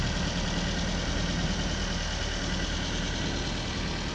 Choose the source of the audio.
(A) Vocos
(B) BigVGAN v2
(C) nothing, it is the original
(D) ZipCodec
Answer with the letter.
C